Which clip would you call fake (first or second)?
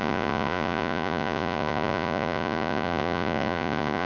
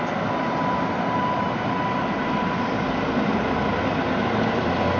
first